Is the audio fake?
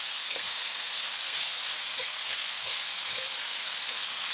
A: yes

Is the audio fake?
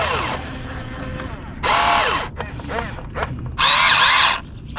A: no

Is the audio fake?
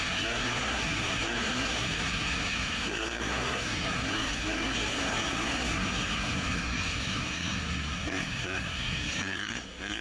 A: yes